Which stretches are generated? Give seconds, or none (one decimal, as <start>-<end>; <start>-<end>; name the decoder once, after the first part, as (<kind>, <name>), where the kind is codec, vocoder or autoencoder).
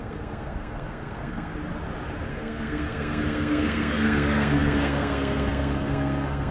0.0-1.5 (codec, SNAC); 2.3-6.5